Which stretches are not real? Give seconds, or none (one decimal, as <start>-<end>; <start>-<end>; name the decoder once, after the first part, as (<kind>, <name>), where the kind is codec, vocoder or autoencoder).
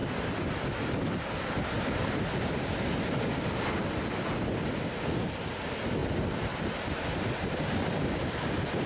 none